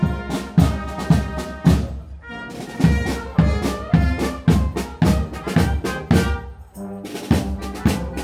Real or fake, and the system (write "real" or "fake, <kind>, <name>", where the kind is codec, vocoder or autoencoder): real